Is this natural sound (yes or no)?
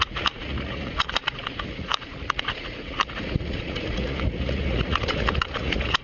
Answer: no